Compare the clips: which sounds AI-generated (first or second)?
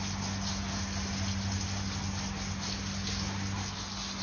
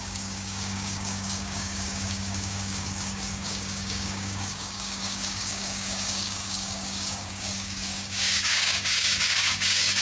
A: second